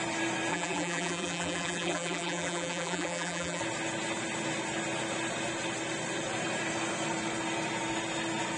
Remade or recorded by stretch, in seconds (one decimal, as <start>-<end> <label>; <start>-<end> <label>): 0.0-0.5 recorded; 0.5-3.6 remade; 3.6-8.6 recorded

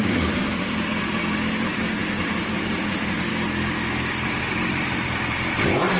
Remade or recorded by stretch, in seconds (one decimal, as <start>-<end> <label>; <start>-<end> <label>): 0.0-3.3 remade; 3.3-4.4 recorded; 4.4-6.0 remade

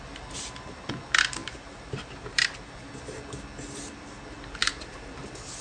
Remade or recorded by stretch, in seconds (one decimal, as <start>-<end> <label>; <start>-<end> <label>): 0.0-1.4 recorded; 1.4-2.9 remade; 2.9-4.6 recorded; 4.6-5.1 remade; 5.1-5.6 recorded

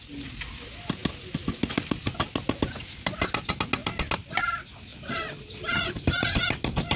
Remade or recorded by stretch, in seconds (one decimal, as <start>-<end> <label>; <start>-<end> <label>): 0.0-4.9 recorded; 4.9-6.0 remade; 6.0-7.0 recorded

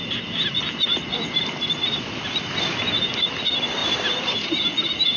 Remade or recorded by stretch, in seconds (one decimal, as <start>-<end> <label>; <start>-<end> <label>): 0.0-3.1 remade; 3.1-3.8 recorded; 3.8-4.5 remade; 4.5-5.2 recorded

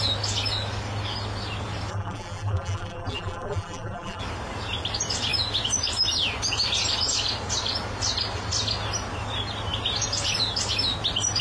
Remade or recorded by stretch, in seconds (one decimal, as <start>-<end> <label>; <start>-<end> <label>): 0.0-1.9 recorded; 1.9-4.2 remade; 4.2-11.4 recorded

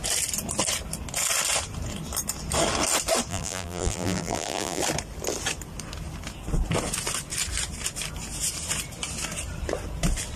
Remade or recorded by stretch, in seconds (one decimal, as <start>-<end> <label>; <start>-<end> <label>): 0.0-3.3 recorded; 3.3-4.8 remade; 4.8-10.4 recorded

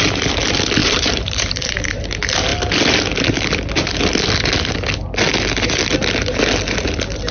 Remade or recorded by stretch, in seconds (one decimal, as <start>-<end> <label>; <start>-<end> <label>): 0.0-0.8 recorded; 0.8-1.9 remade; 1.9-7.3 recorded